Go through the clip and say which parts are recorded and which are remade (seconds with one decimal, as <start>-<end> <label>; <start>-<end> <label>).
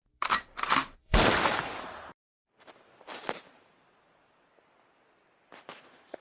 0.0-0.8 recorded; 0.8-4.5 remade; 4.5-6.2 recorded